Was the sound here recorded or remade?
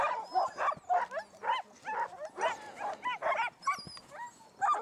recorded